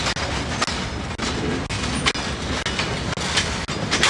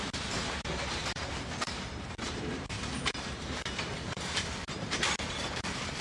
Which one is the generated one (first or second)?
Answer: second